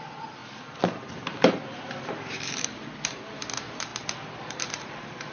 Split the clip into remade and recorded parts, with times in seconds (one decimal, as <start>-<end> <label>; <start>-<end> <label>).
0.0-0.4 remade; 0.4-1.9 recorded; 1.9-3.9 remade; 3.9-4.5 recorded; 4.5-5.3 remade